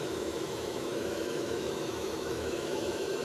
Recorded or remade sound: remade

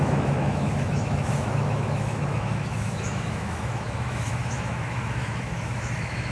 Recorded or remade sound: remade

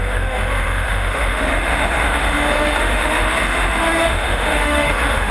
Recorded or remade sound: remade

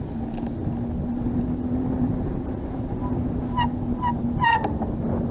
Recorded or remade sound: recorded